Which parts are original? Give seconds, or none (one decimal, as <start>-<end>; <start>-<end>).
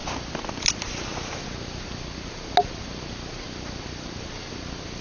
0.0-5.0